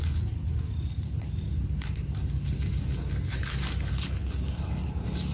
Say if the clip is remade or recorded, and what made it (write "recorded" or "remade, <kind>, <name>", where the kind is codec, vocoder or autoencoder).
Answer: recorded